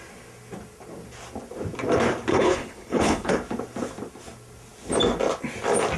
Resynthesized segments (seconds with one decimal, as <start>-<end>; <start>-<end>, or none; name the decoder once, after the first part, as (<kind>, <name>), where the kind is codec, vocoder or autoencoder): 2.3-3.3 (codec, HILCodec)

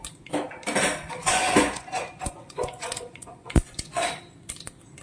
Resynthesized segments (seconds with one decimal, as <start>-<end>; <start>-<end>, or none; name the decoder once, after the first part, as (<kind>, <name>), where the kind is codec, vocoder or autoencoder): 1.2-4.2 (vocoder, Vocos)

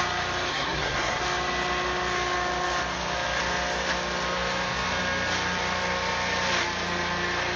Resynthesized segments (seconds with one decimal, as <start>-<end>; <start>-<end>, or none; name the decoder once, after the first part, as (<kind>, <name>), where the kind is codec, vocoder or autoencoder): 0.5-1.2 (codec, SNAC)

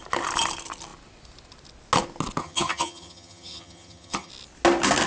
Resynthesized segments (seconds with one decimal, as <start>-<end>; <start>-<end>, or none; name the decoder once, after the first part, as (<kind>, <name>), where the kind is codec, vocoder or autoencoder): 2.4-4.3 (vocoder, HiFi-GAN)

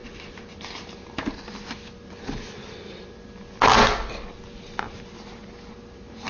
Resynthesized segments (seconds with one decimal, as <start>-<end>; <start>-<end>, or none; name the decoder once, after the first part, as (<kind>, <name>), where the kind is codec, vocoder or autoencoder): none

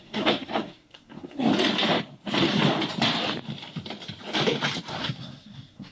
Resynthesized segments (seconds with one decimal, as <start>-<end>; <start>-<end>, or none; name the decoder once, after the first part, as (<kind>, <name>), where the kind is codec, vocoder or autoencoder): 0.0-1.5 (codec, SNAC); 5.0-5.9